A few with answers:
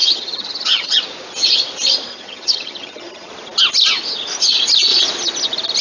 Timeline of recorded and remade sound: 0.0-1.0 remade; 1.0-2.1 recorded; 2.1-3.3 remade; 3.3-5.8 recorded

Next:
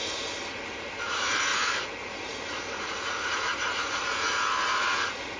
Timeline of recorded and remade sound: 0.0-0.5 recorded; 0.5-5.4 remade

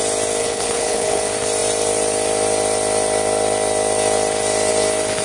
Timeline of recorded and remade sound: 0.0-0.4 recorded; 0.4-1.2 remade; 1.2-5.2 recorded

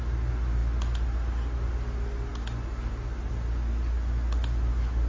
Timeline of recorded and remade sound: 0.0-5.1 recorded